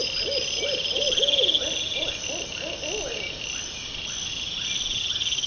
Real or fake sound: real